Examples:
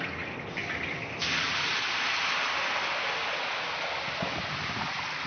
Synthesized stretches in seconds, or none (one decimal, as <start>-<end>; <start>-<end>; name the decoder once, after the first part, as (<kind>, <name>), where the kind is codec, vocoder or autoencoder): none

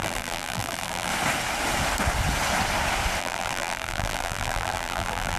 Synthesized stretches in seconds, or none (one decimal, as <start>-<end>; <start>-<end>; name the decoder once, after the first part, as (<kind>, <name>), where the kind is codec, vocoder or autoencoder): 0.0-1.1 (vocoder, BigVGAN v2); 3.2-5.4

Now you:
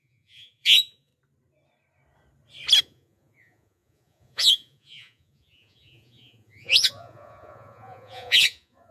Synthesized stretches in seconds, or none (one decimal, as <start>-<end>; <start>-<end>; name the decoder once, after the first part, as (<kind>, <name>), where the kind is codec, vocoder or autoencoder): 0.0-1.1 (vocoder, Vocos); 2.8-8.9